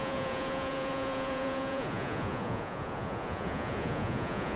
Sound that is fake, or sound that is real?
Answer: fake